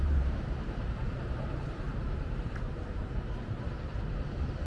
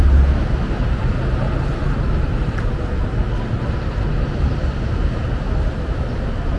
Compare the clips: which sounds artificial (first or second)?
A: first